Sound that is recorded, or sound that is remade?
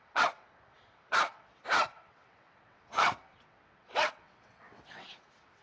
remade